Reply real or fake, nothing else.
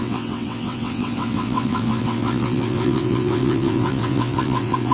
fake